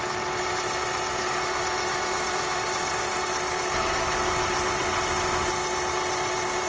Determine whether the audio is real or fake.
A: real